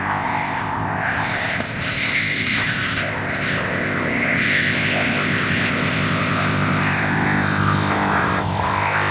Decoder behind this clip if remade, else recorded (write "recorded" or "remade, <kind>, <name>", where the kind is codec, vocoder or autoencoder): remade, codec, ZipCodec